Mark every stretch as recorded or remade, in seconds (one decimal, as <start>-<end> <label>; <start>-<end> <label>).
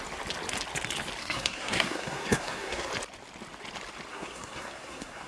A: 0.0-1.2 recorded; 1.2-2.9 remade; 2.9-4.1 recorded; 4.1-5.3 remade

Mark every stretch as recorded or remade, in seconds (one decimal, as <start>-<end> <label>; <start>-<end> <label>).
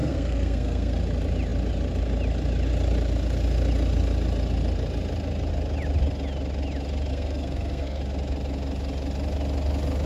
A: 0.0-1.0 remade; 1.0-7.1 recorded; 7.1-8.0 remade; 8.0-10.1 recorded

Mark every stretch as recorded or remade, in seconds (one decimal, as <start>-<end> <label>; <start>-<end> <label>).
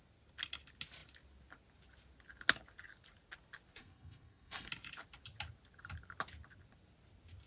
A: 0.0-3.8 recorded; 3.8-4.7 remade; 4.7-7.5 recorded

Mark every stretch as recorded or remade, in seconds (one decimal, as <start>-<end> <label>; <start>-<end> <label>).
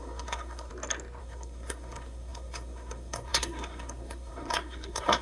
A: 0.0-0.7 remade; 0.7-1.2 recorded; 1.2-5.2 remade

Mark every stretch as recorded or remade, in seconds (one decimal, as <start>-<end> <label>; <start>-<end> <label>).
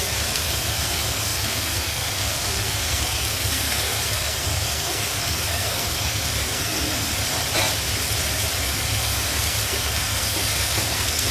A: 0.0-7.1 remade; 7.1-8.6 recorded; 8.6-11.3 remade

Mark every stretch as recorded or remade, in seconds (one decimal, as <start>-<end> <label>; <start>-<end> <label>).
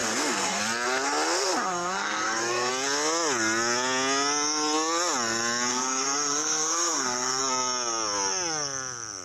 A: 0.0-0.6 remade; 0.6-1.5 recorded; 1.5-2.7 remade; 2.7-5.7 recorded; 5.7-7.4 remade; 7.4-9.2 recorded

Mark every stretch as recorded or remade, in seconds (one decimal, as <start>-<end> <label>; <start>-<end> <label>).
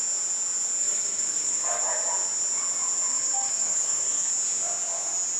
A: 0.0-0.8 recorded; 0.8-1.8 remade; 1.8-3.1 recorded; 3.1-4.3 remade; 4.3-5.4 recorded